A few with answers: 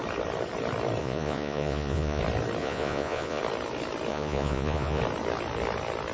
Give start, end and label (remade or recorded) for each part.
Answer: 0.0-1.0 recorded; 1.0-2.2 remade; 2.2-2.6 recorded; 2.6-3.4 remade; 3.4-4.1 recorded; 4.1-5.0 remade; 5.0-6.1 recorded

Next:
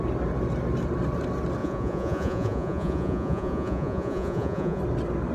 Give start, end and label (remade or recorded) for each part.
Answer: 0.0-1.6 recorded; 1.6-4.8 remade; 4.8-5.3 recorded

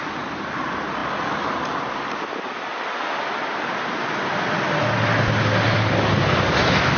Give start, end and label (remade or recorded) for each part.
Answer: 0.0-7.0 recorded

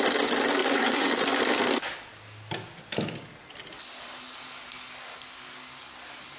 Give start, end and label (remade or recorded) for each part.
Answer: 0.0-0.6 recorded; 0.6-1.1 remade; 1.1-6.4 recorded

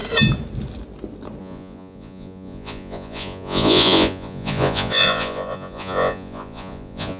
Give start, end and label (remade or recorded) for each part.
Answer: 0.0-1.4 recorded; 1.4-7.2 remade